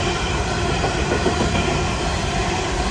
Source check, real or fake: real